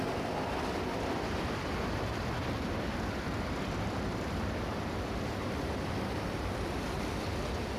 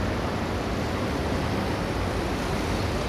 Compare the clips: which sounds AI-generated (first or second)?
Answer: first